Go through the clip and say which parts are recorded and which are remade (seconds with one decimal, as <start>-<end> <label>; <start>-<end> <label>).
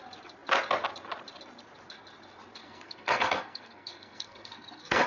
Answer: 0.0-2.6 recorded; 2.6-5.1 remade